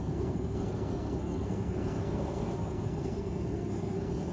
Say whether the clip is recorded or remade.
remade